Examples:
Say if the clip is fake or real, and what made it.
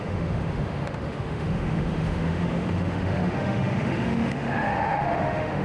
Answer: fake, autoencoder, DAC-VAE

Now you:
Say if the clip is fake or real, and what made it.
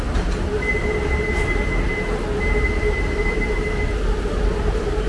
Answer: real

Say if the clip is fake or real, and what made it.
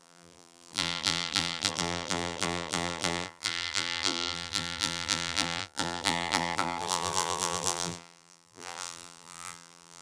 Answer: fake, vocoder, BigVGAN v2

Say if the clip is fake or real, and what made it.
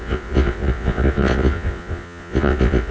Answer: fake, vocoder, Vocos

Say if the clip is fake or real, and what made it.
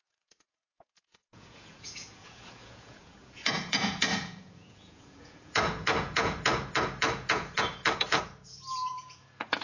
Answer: fake, vocoder, Vocos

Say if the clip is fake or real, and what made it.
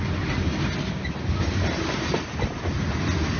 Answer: real